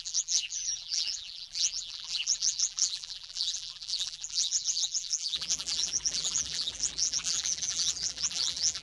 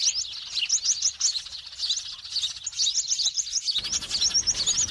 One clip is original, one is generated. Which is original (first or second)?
second